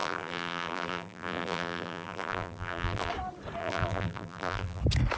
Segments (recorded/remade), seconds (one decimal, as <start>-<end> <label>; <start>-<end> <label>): 0.0-3.1 remade; 3.1-3.6 recorded; 3.6-4.8 remade; 4.8-5.2 recorded